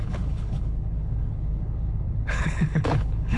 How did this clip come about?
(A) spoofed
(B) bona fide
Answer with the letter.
A